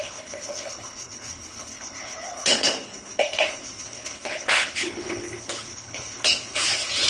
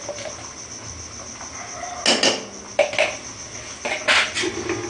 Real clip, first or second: second